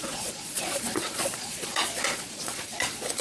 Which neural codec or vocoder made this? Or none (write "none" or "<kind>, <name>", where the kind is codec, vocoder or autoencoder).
vocoder, Vocos